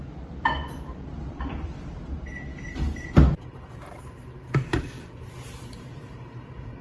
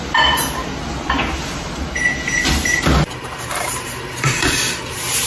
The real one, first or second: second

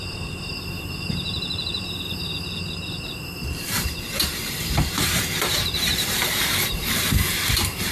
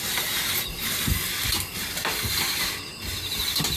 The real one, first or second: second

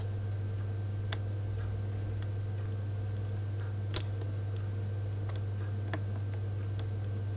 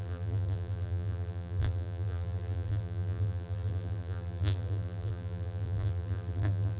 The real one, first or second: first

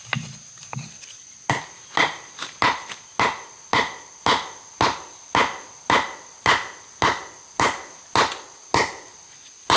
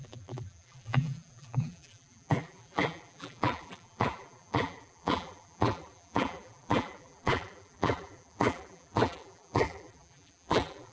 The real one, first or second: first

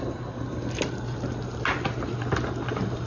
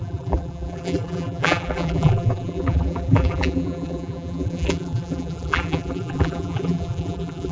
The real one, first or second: first